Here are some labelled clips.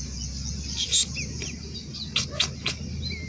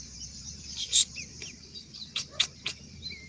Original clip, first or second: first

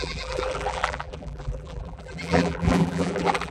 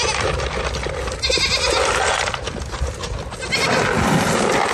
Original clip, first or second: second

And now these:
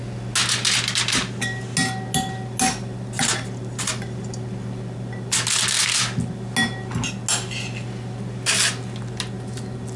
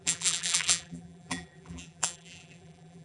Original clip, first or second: first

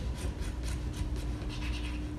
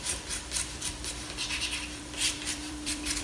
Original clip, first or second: first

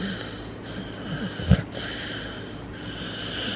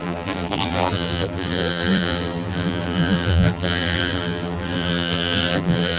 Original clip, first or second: first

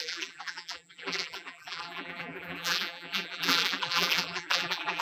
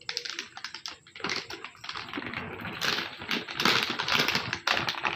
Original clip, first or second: second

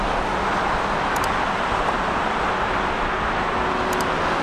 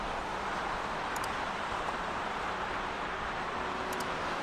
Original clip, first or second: first